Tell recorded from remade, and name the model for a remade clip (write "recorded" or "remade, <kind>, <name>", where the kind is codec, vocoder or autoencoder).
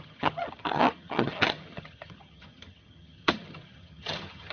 remade, vocoder, HiFi-GAN